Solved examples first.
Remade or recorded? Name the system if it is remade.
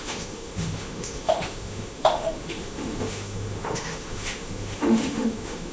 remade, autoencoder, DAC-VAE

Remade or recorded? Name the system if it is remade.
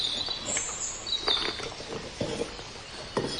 recorded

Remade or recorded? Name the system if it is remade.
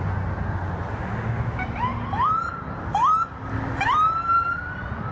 recorded